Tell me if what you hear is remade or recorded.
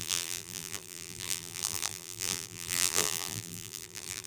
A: remade